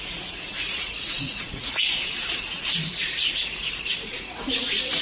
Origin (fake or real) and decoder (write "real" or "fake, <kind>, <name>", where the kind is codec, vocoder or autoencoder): fake, vocoder, Vocos